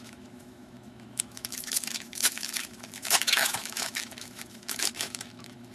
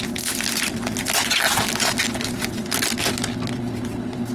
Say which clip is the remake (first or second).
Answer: first